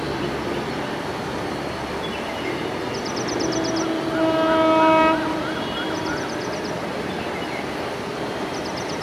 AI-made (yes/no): no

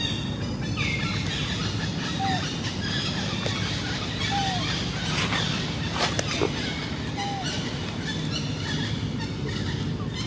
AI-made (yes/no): no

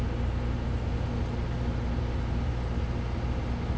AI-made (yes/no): no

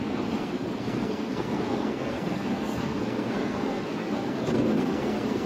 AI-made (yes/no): yes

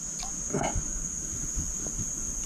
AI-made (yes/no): no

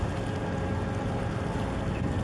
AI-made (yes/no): no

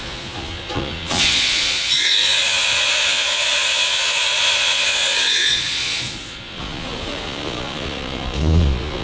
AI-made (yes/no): yes